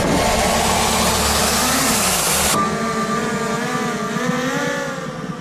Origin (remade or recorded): recorded